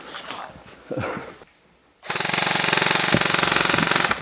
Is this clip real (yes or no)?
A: yes